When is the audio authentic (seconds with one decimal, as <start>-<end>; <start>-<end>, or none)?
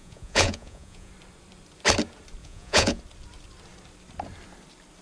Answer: 1.1-2.4; 3.0-5.0